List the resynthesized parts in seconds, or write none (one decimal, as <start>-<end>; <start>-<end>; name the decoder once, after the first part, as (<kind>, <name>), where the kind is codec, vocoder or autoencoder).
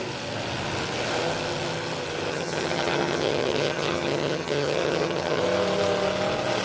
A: 2.3-5.4 (vocoder, HiFi-GAN)